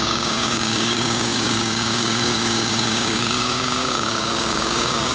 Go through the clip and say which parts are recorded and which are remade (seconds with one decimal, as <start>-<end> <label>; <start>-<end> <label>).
0.0-5.1 remade